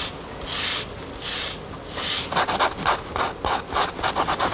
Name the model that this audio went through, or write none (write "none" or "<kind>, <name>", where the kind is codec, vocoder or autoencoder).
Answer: none